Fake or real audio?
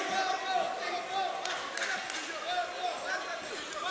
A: real